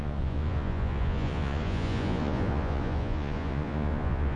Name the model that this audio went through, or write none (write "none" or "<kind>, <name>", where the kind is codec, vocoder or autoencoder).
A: vocoder, Vocos